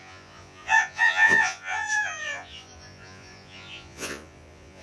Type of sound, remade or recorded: remade